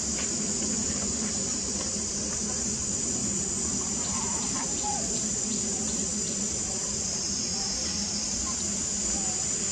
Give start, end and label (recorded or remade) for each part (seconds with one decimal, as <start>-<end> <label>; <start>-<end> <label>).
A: 0.0-3.2 remade; 3.2-3.7 recorded; 3.7-7.8 remade; 7.8-9.7 recorded